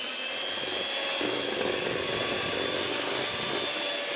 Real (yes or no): yes